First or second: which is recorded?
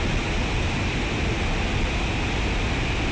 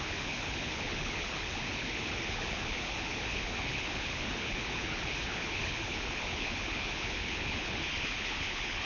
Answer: first